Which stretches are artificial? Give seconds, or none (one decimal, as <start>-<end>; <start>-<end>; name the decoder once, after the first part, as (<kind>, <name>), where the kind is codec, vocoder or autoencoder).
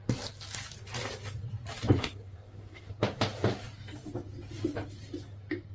2.0-2.9 (codec, SNAC)